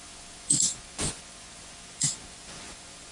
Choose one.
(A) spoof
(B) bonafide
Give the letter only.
A